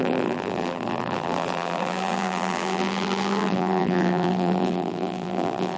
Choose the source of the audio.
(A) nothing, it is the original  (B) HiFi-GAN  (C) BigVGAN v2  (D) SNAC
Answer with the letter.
C